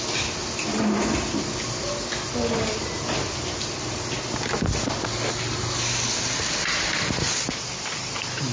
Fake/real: real